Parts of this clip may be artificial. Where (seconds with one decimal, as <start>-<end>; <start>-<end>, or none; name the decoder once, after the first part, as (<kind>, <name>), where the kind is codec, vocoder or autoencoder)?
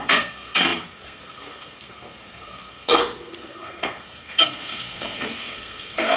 0.0-6.2 (codec, SNAC)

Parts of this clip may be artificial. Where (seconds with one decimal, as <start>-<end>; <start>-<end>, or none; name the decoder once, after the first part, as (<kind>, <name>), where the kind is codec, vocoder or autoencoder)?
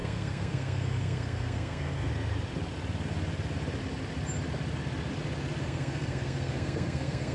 0.0-2.1 (codec, SNAC); 5.6-7.3